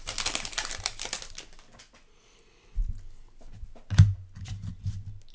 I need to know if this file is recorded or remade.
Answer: recorded